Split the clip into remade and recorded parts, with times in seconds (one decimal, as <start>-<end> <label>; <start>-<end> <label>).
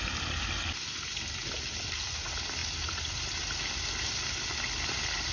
0.0-5.3 recorded